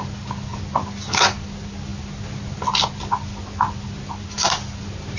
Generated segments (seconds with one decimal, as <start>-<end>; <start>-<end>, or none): none